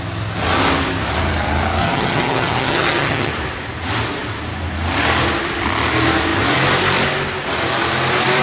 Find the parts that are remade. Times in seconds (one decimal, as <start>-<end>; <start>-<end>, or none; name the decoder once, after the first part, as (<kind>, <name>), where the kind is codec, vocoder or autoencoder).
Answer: 1.8-3.3 (vocoder, HiFi-GAN)